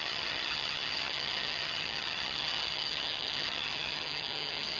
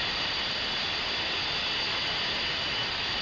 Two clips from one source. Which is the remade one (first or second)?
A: first